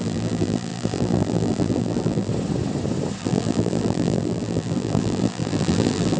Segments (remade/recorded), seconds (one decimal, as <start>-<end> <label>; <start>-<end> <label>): 0.0-2.3 remade; 2.3-3.2 recorded; 3.2-6.2 remade